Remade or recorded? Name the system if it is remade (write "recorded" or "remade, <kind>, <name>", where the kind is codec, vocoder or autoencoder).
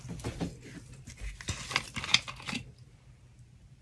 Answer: recorded